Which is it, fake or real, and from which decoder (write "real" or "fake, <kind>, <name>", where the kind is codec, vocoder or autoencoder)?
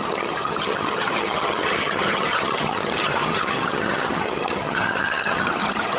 fake, vocoder, HiFi-GAN